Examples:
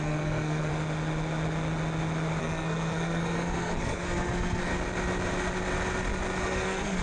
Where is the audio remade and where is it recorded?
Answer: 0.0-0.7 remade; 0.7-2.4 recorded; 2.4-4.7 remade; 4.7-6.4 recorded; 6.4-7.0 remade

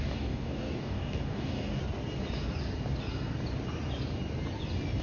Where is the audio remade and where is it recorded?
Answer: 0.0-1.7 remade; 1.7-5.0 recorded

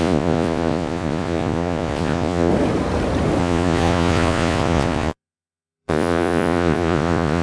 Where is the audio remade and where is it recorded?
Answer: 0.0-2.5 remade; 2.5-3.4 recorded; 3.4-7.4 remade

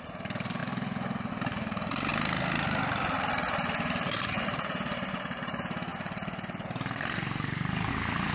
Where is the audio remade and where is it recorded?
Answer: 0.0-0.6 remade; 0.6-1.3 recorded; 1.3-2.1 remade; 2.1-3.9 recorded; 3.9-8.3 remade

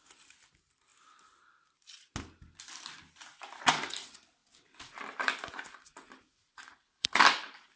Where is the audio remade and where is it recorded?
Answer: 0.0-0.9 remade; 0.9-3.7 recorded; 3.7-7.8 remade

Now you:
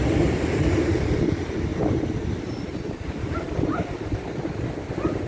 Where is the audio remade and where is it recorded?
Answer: 0.0-1.7 recorded; 1.7-3.6 remade; 3.6-5.3 recorded

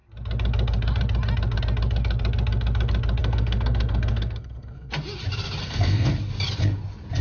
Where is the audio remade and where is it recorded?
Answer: 0.0-3.2 recorded; 3.2-4.9 remade; 4.9-5.6 recorded; 5.6-6.1 remade; 6.1-7.2 recorded

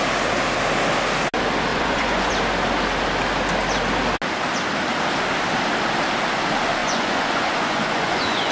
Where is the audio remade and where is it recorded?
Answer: 0.0-1.7 recorded; 1.7-2.3 remade; 2.3-6.8 recorded; 6.8-8.5 remade